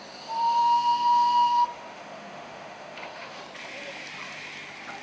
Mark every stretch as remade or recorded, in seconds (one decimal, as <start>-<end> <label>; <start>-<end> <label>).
0.0-0.6 recorded; 0.6-3.4 remade; 3.4-5.0 recorded